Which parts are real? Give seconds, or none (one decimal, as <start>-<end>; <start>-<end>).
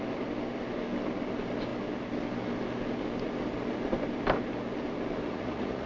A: 0.0-5.3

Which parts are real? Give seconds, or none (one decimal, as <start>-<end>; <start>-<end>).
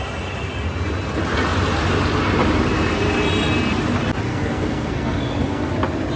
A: 0.0-4.3; 5.7-6.2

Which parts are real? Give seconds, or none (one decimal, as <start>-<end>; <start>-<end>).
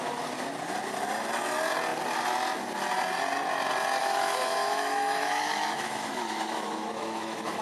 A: 0.0-4.0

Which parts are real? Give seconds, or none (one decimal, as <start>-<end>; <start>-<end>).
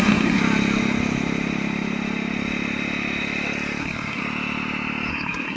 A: 0.4-3.8; 4.2-5.1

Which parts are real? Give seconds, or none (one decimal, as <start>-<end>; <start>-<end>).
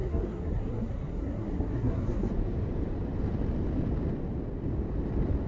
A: 2.3-5.5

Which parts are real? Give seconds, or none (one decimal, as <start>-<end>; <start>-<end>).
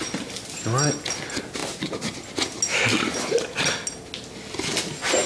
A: 0.0-5.3